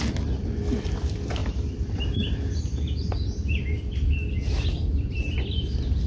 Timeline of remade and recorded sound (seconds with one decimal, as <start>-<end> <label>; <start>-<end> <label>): 0.0-6.1 recorded

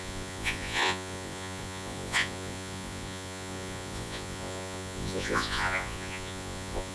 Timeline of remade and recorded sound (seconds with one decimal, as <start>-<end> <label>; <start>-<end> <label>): 0.0-6.9 remade

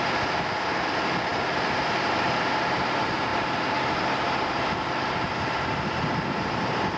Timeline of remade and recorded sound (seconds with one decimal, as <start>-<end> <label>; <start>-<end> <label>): 0.0-7.0 recorded

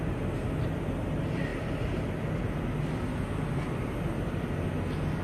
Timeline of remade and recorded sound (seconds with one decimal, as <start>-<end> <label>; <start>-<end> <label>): 0.0-5.2 recorded

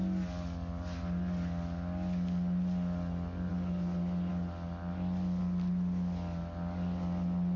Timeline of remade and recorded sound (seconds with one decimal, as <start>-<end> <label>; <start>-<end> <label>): 0.0-7.6 recorded